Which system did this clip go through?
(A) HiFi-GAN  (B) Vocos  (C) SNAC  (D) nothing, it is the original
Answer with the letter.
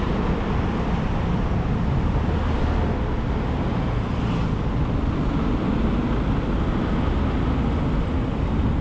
D